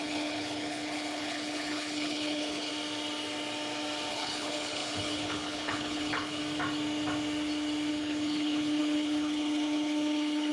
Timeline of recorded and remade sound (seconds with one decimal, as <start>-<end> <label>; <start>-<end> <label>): 0.0-2.7 remade; 2.7-4.1 recorded; 4.1-6.4 remade; 6.4-7.9 recorded; 7.9-10.5 remade